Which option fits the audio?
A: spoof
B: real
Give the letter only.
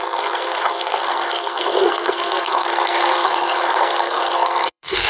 A